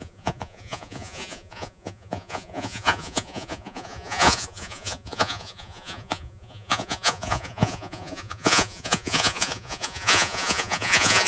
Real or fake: fake